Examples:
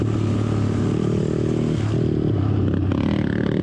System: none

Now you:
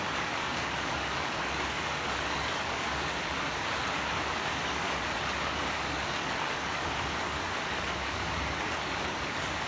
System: codec, DAC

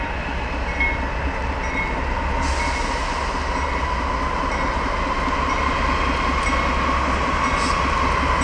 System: none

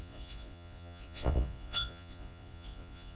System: vocoder, Vocos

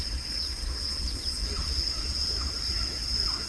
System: vocoder, Vocos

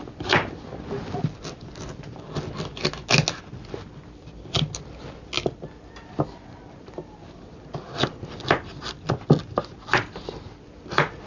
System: none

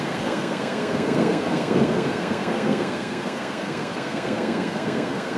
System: codec, SNAC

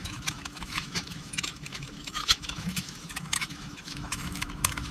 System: autoencoder, DAC-VAE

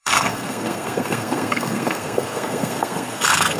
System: codec, SNAC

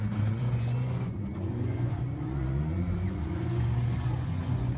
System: vocoder, Vocos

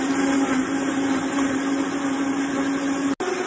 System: none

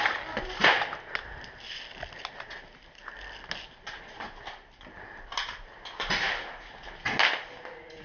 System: none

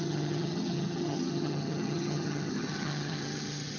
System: vocoder, HiFi-GAN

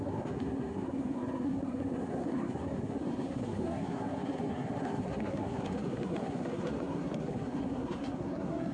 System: codec, SNAC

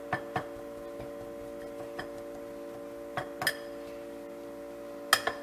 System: none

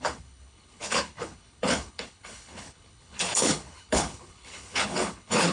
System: codec, HILCodec